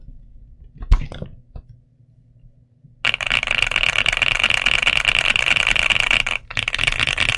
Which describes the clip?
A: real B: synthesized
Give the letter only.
A